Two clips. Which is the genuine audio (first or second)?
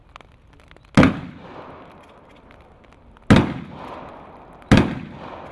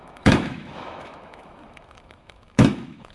first